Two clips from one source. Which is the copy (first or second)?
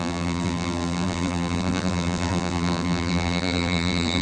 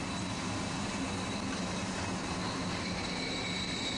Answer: first